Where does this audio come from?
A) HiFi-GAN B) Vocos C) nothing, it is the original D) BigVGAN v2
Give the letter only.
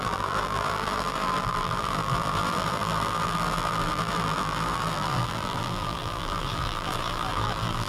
D